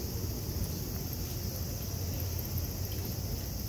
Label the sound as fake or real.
real